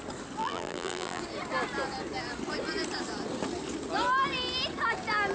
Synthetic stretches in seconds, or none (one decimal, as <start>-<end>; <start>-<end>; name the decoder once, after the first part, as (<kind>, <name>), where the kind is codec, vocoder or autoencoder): 0.4-1.2 (vocoder, BigVGAN v2)